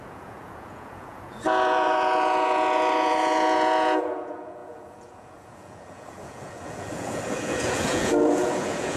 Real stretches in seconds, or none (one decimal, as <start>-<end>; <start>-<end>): none